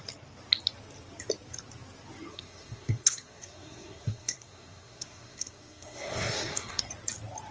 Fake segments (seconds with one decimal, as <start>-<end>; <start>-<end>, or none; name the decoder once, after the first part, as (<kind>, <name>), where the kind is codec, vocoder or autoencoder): 2.3-6.8 (codec, SNAC)